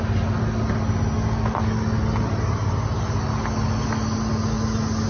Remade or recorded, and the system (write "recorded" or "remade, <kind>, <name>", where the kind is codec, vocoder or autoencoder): recorded